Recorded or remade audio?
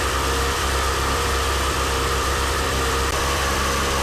remade